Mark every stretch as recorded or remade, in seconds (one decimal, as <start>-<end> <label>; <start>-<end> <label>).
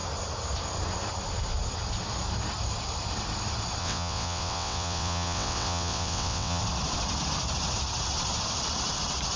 0.0-3.8 recorded; 3.8-6.6 remade; 6.6-9.4 recorded